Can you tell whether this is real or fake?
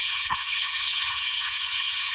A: fake